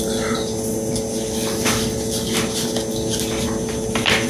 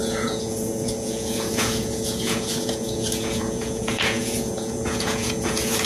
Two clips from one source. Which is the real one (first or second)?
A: first